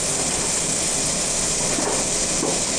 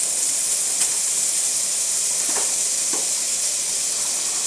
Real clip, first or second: first